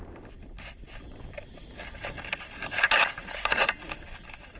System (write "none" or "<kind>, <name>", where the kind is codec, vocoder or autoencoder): none